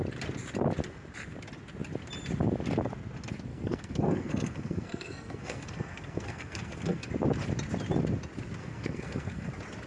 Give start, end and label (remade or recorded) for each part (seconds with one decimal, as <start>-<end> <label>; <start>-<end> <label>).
0.0-3.5 recorded; 3.5-7.1 remade; 7.1-8.6 recorded; 8.6-9.5 remade; 9.5-9.9 recorded